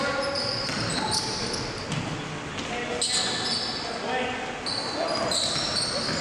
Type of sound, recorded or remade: recorded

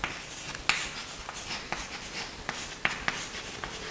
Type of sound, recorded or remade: recorded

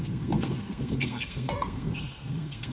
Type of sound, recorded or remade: remade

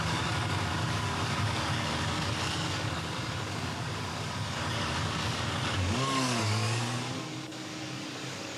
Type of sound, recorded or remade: remade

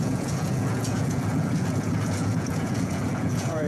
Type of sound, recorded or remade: remade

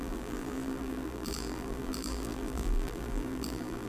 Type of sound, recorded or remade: remade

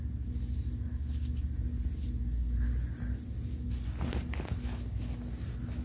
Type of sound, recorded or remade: recorded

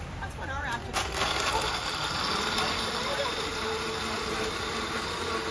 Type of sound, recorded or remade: recorded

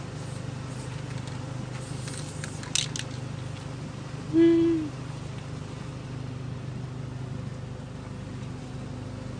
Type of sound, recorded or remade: recorded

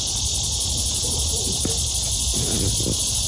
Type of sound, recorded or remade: recorded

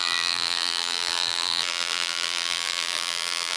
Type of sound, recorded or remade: remade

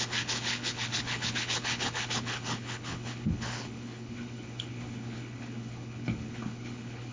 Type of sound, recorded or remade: remade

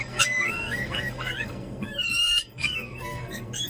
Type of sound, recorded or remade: remade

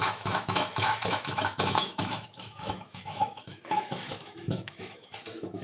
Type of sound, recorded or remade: remade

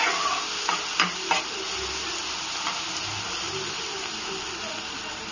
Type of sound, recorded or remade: recorded